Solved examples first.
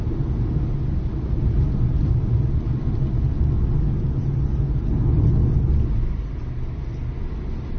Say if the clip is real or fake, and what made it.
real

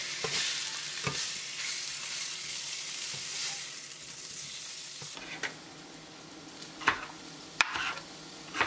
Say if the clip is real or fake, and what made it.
fake, vocoder, BigVGAN v2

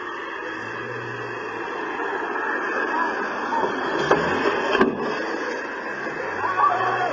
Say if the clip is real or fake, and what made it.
real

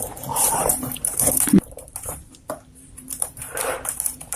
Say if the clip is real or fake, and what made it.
fake, vocoder, BigVGAN v2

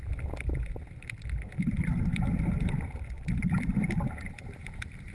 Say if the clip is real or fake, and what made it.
real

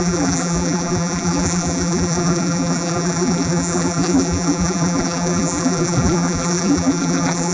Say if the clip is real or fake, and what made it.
fake, vocoder, BigVGAN v2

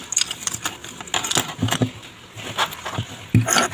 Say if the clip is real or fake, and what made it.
real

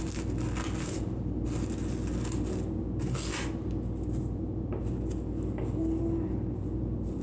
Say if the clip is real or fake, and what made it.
real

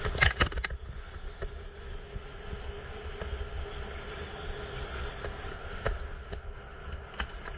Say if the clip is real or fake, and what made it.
real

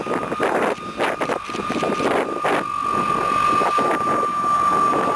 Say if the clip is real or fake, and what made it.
real